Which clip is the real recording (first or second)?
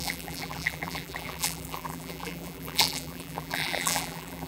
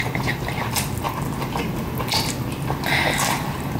second